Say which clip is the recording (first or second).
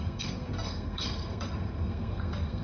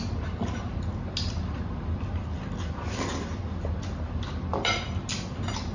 second